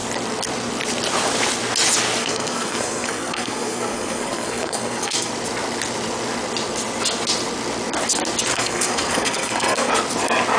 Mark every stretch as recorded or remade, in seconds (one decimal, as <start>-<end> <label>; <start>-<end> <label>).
0.0-2.2 recorded; 2.2-5.3 remade; 5.3-8.5 recorded; 8.5-9.9 remade; 9.9-10.6 recorded